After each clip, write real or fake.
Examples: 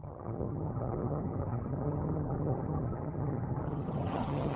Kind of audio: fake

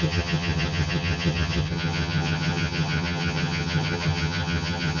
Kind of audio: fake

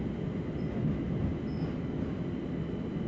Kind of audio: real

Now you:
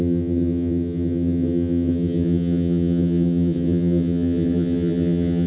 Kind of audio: fake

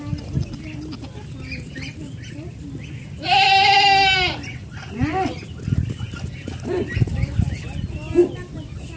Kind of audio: real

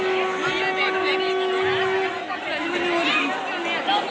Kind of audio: real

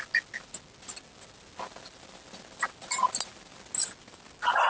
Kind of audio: real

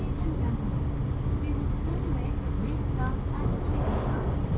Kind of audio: real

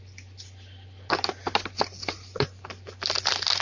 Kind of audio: real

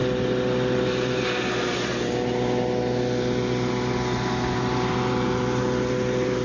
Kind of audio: real